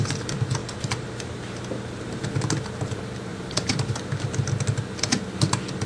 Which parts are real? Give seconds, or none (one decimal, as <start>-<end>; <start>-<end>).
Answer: 0.0-0.6; 2.2-3.3; 4.5-5.9